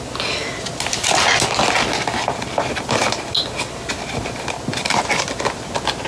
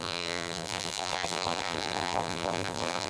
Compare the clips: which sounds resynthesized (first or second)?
second